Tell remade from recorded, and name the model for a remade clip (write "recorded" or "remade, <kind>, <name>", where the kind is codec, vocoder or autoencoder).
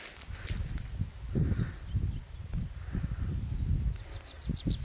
recorded